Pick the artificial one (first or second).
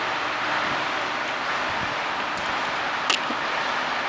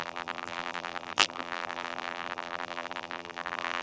second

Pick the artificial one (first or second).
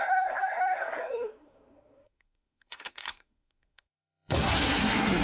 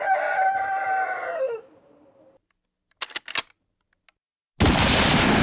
first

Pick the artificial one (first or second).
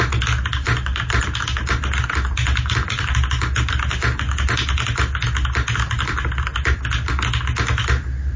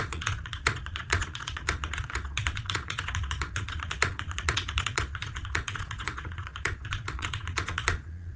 second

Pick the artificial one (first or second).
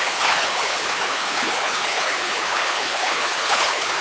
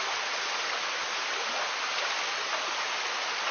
first